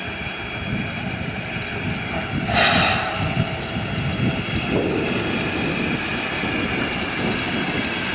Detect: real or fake real